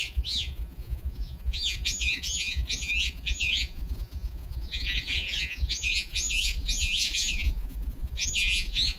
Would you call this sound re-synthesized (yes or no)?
yes